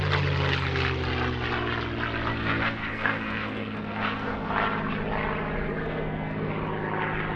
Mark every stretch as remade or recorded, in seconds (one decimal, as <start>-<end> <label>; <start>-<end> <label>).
0.0-2.3 recorded; 2.3-4.5 remade; 4.5-5.8 recorded; 5.8-6.5 remade; 6.5-7.4 recorded